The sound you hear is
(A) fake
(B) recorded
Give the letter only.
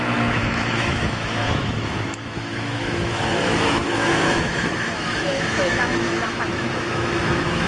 A